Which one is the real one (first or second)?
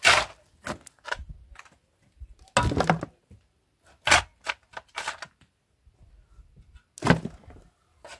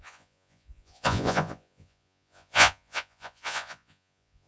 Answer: first